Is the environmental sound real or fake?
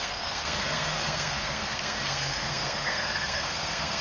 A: fake